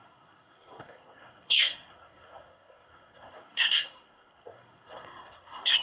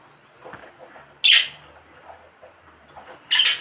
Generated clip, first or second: first